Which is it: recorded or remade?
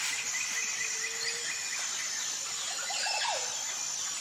recorded